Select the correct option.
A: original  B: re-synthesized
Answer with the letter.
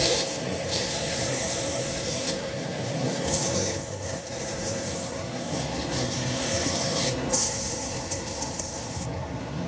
B